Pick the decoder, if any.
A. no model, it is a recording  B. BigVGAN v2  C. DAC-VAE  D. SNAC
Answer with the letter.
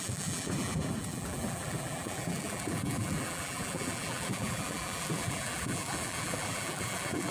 B